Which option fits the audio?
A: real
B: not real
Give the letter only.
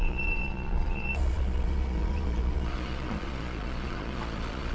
B